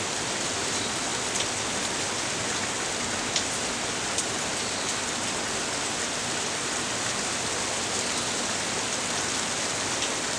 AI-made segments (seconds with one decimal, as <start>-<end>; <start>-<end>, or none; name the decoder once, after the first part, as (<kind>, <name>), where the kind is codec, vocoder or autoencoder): none